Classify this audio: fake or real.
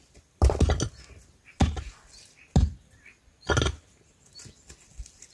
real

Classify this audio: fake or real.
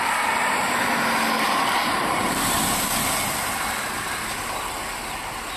real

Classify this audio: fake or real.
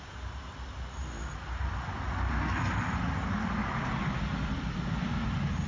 real